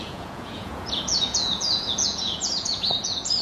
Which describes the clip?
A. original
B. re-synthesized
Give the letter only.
B